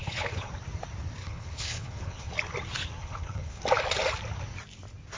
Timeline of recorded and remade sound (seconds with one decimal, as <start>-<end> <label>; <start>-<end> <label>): 0.0-0.5 remade; 0.5-1.2 recorded; 1.2-2.3 remade; 2.3-3.0 recorded; 3.0-3.6 remade; 3.6-5.2 recorded